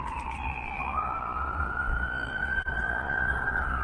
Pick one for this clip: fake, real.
fake